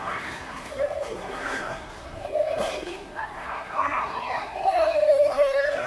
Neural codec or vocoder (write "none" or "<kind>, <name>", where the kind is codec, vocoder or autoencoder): codec, SNAC